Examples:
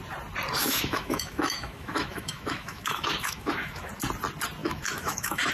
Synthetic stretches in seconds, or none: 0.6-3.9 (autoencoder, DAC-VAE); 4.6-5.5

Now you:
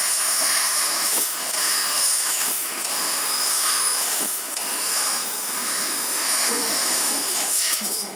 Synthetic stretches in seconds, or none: 0.0-8.2 (autoencoder, DAC-VAE)

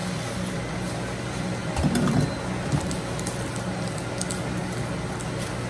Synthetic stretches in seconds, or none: none

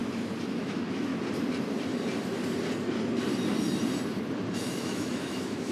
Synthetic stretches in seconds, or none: 0.5-1.1 (autoencoder, DAC-VAE); 4.5-5.7

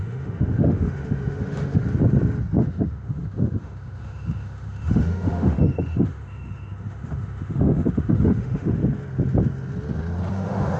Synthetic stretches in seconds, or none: 0.0-1.8 (autoencoder, DAC-VAE); 2.6-8.8; 10.3-10.8

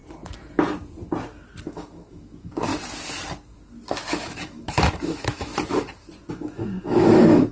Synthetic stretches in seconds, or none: 1.7-2.7 (autoencoder, DAC-VAE); 4.1-5.5; 6.3-7.5

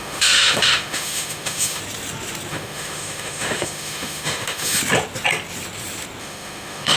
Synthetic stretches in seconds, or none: 0.0-1.8 (autoencoder, DAC-VAE); 2.5-4.8; 6.2-7.0